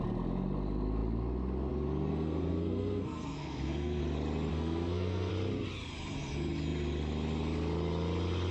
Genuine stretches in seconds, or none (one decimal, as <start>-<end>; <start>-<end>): 0.0-2.1; 4.0-4.5; 5.3-8.5